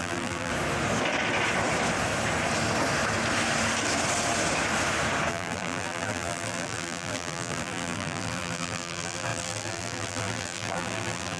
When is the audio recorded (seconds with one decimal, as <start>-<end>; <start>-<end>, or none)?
0.5-5.3

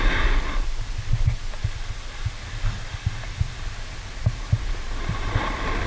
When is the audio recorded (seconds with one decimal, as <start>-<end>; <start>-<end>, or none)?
0.0-4.1; 5.1-5.9

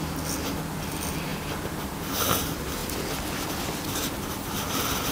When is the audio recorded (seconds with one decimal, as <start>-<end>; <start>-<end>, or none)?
0.0-5.1

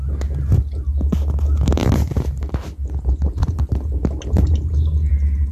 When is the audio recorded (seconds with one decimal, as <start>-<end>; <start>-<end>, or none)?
0.0-1.8; 5.1-5.5

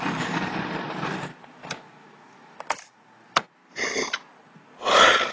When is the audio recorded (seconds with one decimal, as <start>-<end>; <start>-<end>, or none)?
1.3-2.1; 3.6-5.3

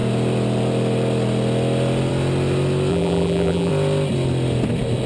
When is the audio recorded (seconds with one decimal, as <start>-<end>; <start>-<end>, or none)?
0.0-2.9; 3.7-5.1